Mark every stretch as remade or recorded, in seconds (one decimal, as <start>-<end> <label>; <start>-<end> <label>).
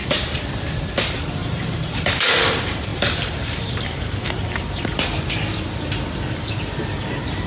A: 0.0-0.5 remade; 0.5-1.4 recorded; 1.4-2.1 remade; 2.1-2.9 recorded; 2.9-5.0 remade; 5.0-7.5 recorded